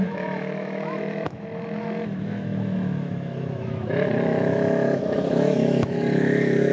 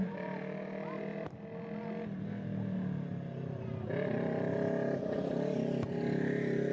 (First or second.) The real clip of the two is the second